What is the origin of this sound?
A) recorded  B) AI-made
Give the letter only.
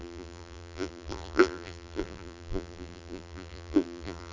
B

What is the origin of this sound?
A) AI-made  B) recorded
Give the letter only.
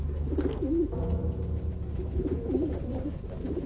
B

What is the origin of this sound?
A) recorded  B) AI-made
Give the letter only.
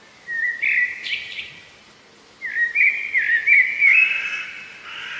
A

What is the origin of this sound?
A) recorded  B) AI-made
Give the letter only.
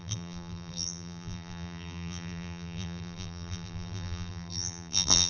B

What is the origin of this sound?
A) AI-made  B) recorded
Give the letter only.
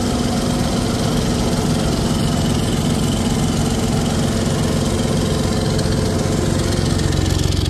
B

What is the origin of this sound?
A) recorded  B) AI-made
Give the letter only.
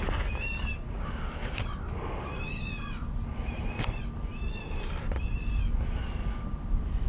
B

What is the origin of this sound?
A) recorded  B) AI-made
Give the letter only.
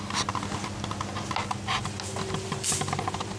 A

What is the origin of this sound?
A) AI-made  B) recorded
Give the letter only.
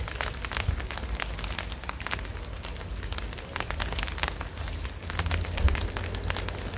B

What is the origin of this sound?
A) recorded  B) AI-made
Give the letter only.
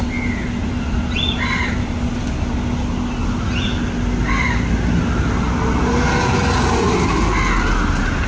A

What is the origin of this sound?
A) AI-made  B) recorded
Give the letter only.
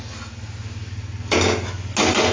B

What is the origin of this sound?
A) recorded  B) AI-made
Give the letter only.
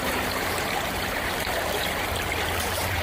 B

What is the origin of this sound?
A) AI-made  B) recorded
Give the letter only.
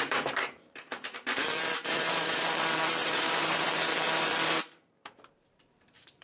A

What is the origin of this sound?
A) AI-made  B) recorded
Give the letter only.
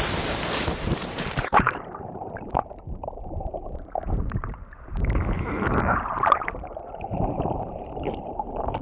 A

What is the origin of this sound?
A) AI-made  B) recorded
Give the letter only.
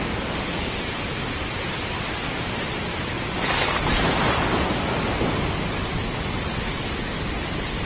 B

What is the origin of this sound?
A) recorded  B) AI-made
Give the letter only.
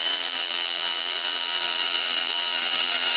B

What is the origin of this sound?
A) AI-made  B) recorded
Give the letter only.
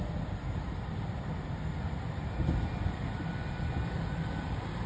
A